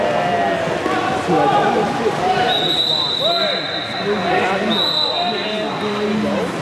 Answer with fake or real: real